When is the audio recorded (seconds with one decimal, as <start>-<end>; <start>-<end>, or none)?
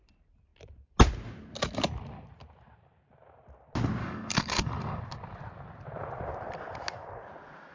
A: 0.0-4.0; 5.0-7.7